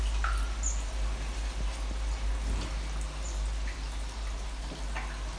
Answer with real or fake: real